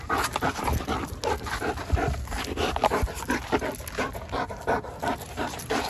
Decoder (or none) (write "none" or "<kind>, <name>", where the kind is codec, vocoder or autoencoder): none